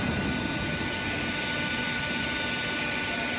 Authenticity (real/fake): real